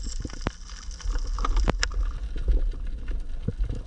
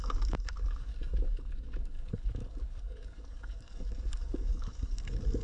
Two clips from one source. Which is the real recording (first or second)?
first